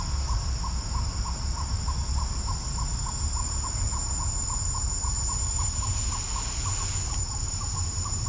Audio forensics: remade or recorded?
recorded